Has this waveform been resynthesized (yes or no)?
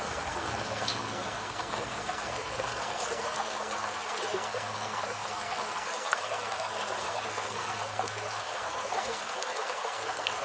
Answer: yes